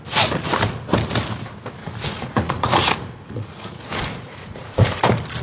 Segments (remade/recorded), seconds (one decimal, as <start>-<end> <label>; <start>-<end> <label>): 0.0-1.8 recorded; 1.8-5.0 remade; 5.0-5.4 recorded